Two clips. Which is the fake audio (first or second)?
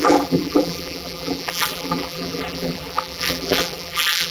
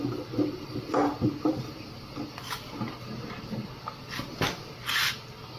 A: first